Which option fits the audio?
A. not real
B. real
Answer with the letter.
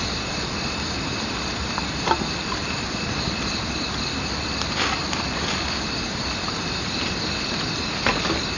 B